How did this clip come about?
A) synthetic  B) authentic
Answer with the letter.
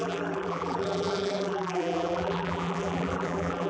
A